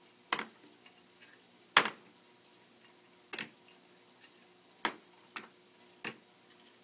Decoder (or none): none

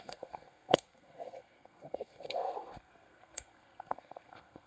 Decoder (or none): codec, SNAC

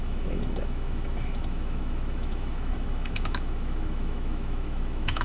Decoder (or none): autoencoder, DAC-VAE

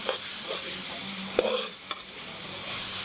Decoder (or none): none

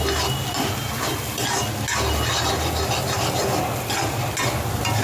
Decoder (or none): none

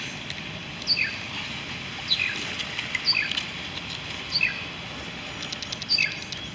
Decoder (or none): none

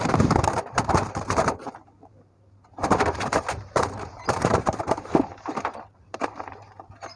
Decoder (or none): vocoder, BigVGAN v2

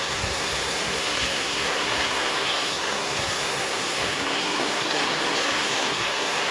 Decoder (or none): codec, SNAC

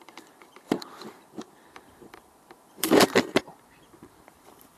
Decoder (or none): vocoder, BigVGAN v2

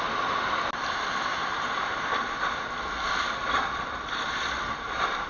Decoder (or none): none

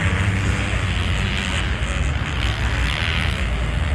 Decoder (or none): none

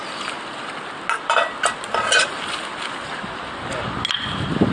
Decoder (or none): none